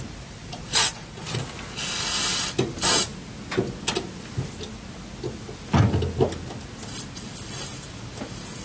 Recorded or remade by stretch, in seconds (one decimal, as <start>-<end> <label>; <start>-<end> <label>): 0.0-0.4 recorded; 0.4-1.4 remade; 1.4-8.6 recorded